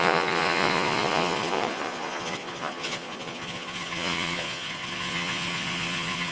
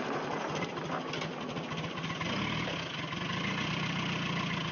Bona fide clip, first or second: second